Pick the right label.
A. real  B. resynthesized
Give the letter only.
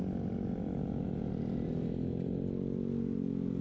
A